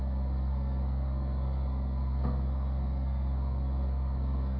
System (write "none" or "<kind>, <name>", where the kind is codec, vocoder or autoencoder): codec, SNAC